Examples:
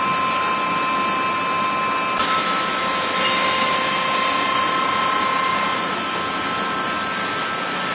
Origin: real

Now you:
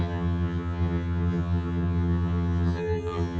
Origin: fake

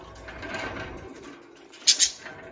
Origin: real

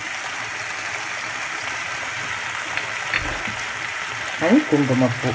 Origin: real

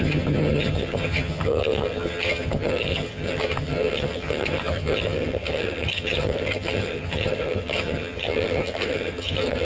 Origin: fake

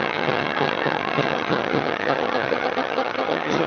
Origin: fake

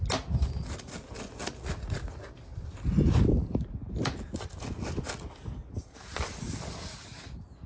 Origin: real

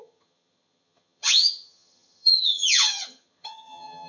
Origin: fake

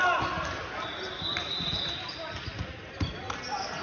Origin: real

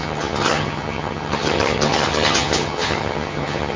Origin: fake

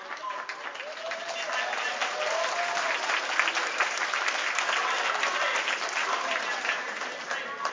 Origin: real